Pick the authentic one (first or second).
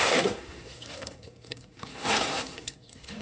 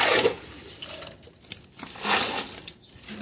second